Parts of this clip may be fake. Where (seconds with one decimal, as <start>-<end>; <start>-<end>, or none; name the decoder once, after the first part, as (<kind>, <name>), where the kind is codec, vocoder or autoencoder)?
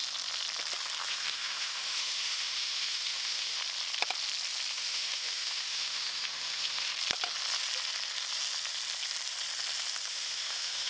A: 1.1-3.6 (autoencoder, DAC-VAE); 4.7-6.9; 10.1-10.9